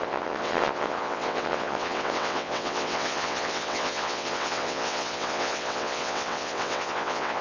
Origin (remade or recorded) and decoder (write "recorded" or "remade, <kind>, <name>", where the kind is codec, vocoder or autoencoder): remade, vocoder, WaveNeXt